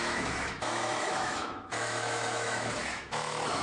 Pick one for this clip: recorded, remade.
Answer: remade